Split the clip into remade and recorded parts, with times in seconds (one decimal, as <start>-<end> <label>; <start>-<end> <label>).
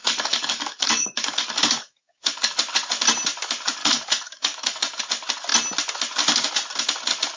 0.0-2.6 remade; 2.6-3.8 recorded; 3.8-5.0 remade; 5.0-7.4 recorded